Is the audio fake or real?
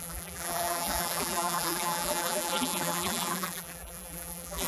fake